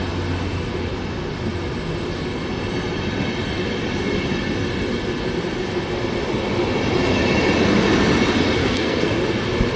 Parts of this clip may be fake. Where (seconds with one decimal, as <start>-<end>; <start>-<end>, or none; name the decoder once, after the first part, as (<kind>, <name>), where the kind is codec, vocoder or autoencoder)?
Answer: 8.6-9.2 (codec, SNAC)